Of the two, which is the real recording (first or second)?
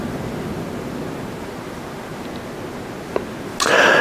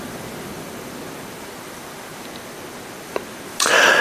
first